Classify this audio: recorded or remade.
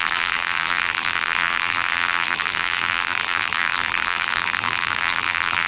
remade